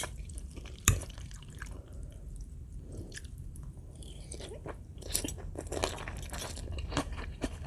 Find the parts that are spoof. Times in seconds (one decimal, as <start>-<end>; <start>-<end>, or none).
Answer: 0.0-5.8; 6.7-7.7